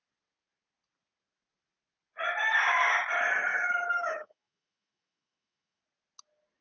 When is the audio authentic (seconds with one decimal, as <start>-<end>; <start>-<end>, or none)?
0.0-3.5; 5.8-6.6